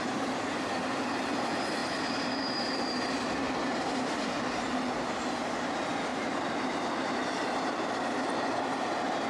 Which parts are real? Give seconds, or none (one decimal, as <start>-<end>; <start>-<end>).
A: 0.0-1.8; 4.9-6.1; 8.1-9.3

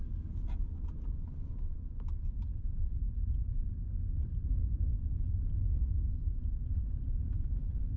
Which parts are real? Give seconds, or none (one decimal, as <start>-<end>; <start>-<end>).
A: 5.0-6.7

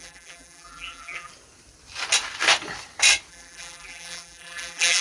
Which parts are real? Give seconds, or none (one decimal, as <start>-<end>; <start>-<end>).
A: 1.3-3.3

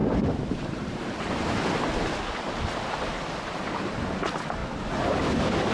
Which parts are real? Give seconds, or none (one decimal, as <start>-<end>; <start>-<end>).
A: 1.3-5.7

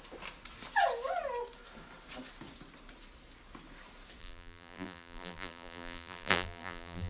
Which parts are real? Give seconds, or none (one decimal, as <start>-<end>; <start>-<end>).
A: 0.0-4.2

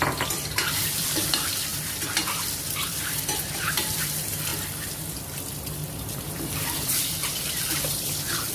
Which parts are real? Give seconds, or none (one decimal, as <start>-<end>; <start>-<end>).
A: 1.7-2.9; 4.5-6.1